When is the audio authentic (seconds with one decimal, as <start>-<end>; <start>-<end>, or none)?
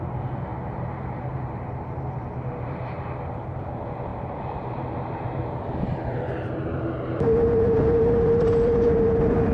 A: none